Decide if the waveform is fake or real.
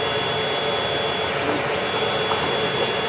real